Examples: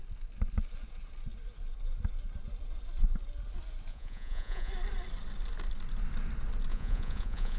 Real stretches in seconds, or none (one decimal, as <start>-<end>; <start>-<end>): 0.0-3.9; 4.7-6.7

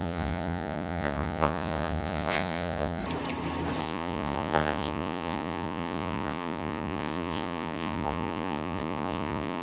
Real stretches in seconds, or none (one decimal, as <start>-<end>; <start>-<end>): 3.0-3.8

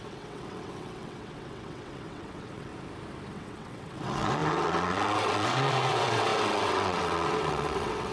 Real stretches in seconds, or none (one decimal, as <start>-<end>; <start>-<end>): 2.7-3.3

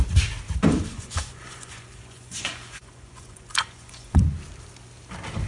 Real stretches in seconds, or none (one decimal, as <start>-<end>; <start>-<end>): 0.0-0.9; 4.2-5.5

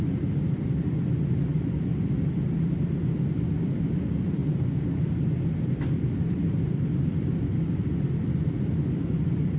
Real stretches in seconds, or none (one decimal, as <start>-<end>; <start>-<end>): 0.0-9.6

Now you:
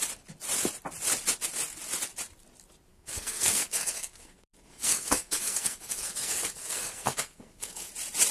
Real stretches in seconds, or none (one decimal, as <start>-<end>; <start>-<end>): 0.0-2.9; 7.9-8.3